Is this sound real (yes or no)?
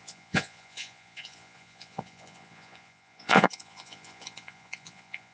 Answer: no